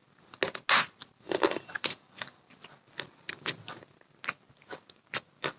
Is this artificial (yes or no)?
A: no